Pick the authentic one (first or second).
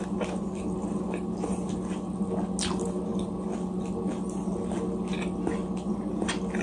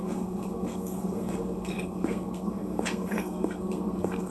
first